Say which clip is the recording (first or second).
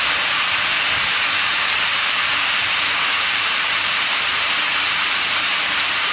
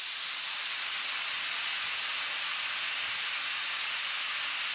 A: second